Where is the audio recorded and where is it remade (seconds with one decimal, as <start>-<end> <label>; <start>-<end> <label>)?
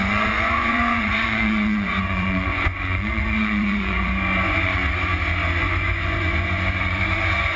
0.0-4.8 remade; 4.8-5.6 recorded; 5.6-7.6 remade